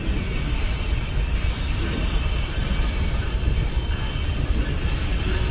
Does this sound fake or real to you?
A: real